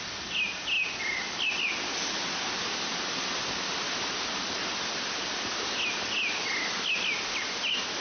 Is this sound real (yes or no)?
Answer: yes